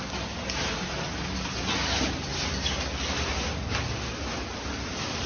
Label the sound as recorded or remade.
recorded